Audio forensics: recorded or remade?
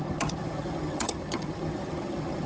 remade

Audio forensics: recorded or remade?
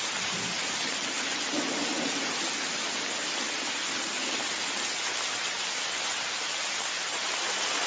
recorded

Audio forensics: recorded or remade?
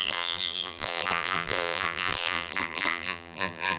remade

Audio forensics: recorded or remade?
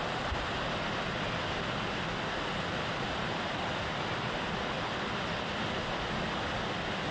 recorded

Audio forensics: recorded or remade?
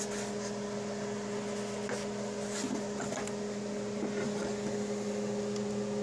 recorded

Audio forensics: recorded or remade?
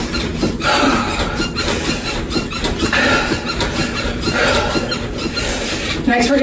remade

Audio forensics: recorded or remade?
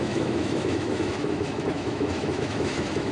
remade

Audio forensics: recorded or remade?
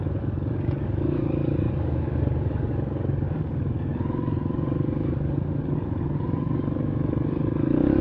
remade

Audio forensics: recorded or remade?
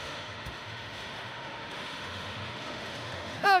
remade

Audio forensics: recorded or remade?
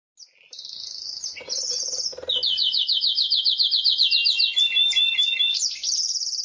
recorded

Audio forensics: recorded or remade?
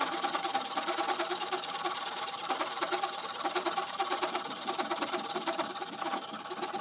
remade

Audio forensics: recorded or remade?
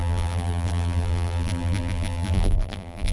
remade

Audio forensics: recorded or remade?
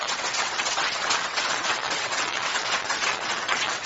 remade